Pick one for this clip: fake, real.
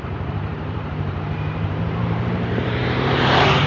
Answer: fake